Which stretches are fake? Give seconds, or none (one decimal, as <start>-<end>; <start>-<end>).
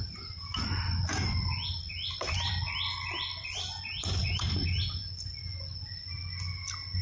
none